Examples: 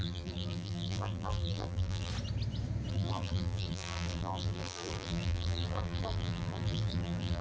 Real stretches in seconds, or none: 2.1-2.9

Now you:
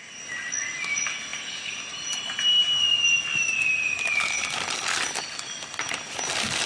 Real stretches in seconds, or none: 0.0-6.7

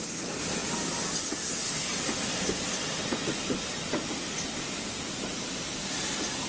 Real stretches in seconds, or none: 0.0-6.5

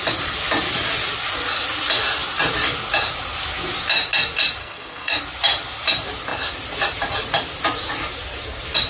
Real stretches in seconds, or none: 0.0-4.6; 5.2-8.9

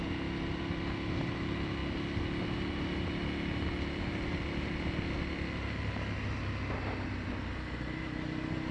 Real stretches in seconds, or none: 0.0-8.7